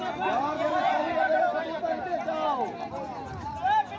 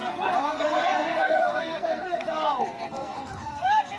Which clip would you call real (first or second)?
first